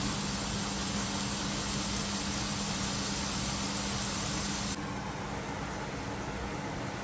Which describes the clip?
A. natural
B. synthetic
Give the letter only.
A